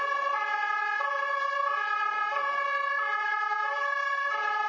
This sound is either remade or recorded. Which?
recorded